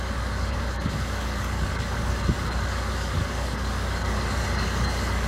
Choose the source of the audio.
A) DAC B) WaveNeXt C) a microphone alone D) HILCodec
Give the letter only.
A